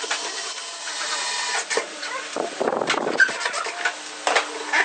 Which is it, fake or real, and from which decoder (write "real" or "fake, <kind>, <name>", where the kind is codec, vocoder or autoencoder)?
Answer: real